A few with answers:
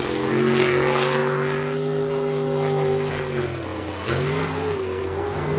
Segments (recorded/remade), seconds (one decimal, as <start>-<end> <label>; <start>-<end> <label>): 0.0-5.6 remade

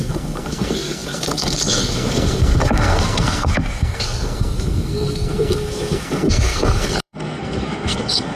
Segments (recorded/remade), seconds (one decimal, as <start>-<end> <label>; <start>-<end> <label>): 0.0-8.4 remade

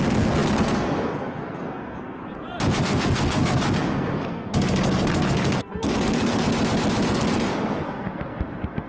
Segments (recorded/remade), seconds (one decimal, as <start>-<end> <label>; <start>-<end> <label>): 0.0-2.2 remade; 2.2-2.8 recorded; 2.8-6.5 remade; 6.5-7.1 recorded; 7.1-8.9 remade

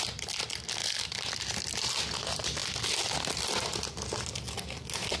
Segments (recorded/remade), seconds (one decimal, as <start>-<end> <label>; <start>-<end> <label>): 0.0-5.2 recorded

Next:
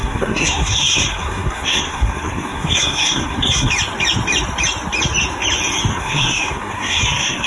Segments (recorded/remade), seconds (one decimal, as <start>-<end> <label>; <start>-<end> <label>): 0.0-3.7 remade; 3.7-5.9 recorded; 5.9-7.5 remade

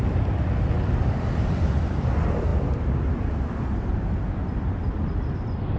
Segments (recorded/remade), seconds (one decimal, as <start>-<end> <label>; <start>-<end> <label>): 0.0-5.8 recorded